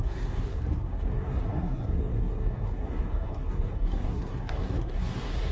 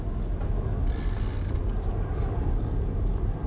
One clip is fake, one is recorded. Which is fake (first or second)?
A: first